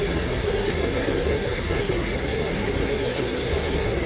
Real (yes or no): no